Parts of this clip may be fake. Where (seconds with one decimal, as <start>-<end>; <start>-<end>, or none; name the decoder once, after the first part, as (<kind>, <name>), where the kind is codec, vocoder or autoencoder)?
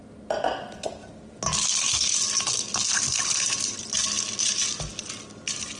none